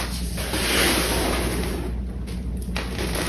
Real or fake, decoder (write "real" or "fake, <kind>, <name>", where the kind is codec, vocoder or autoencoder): real